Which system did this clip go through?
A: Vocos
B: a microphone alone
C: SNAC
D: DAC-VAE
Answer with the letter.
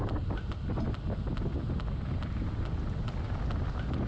B